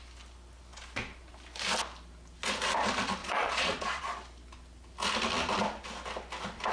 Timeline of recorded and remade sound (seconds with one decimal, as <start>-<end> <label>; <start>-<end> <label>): 0.0-3.2 recorded; 3.2-4.0 remade; 4.0-6.7 recorded